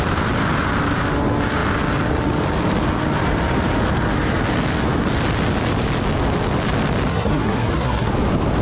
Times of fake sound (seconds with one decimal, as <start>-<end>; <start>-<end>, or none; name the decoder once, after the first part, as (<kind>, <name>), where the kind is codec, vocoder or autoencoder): 7.1-8.1 (codec, SNAC)